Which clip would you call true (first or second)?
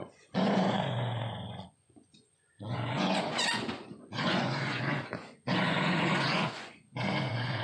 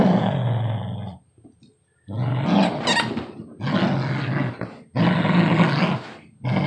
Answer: second